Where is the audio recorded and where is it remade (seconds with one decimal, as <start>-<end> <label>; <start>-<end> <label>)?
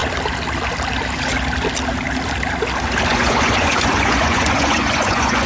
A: 0.0-3.1 recorded; 3.1-5.5 remade